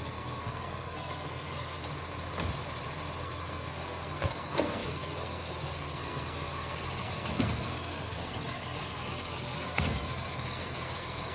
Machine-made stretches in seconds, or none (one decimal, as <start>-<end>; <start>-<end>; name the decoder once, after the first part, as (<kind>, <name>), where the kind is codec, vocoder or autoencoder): 0.0-1.8 (codec, SNAC); 3.2-11.3